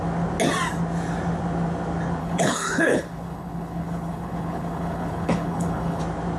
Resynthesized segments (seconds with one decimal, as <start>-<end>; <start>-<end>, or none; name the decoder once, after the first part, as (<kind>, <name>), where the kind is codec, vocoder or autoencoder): 2.2-6.0 (codec, HILCodec)